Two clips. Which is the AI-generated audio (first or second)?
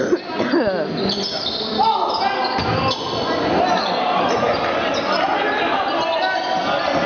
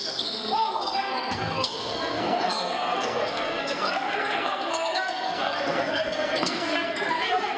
second